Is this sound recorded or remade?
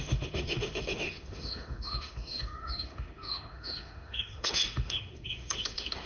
remade